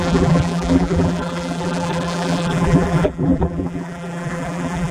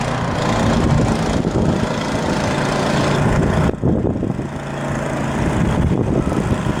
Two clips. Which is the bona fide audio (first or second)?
second